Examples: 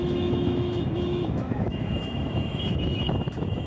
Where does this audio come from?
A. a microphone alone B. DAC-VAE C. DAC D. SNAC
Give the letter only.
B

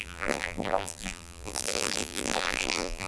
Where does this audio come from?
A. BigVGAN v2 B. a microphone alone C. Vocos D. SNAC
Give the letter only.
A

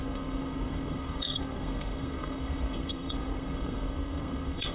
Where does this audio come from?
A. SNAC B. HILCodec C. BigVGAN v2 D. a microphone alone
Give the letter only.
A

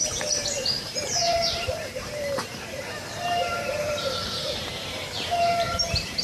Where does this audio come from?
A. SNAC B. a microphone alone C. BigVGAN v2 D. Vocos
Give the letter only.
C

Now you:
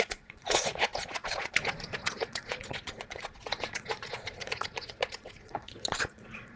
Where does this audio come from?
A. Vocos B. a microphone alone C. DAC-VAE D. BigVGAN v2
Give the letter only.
A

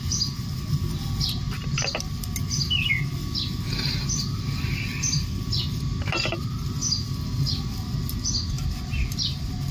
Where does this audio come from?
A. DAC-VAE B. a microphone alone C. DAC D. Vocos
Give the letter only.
B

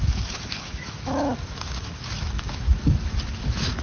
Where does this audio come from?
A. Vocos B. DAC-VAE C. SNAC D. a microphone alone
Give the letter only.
B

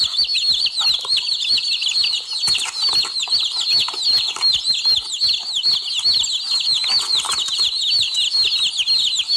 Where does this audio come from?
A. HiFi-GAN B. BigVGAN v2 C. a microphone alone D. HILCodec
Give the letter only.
C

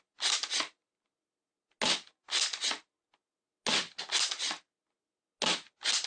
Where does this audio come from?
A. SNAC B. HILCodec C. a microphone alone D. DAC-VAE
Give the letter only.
C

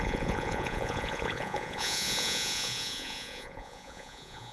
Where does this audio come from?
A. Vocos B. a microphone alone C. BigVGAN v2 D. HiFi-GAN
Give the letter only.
A